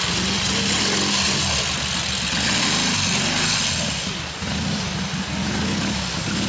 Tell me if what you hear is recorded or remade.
recorded